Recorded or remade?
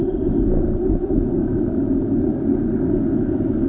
recorded